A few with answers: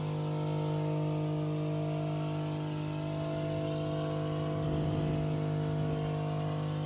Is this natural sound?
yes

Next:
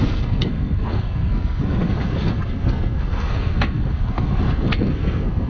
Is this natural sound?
no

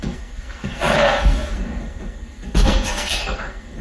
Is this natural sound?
no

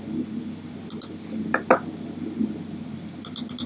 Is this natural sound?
yes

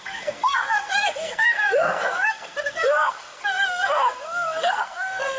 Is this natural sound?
no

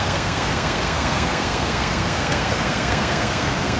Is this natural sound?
no